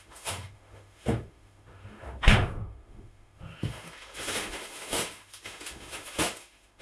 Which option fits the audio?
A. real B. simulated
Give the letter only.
B